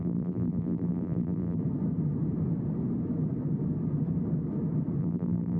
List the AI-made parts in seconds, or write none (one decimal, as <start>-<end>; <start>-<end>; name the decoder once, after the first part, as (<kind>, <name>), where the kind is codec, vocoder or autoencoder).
0.0-1.6 (vocoder, BigVGAN v2); 5.0-5.6